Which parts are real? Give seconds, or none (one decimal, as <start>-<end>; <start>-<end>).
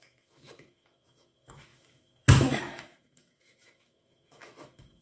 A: none